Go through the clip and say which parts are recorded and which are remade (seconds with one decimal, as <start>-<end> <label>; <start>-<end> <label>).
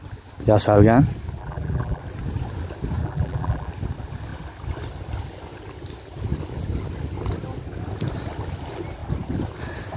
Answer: 0.0-1.4 recorded; 1.4-2.0 remade; 2.0-3.0 recorded; 3.0-3.7 remade; 3.7-10.0 recorded